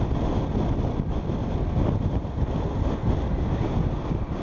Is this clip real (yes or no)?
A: yes